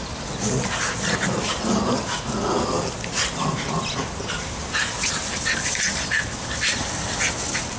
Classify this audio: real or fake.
real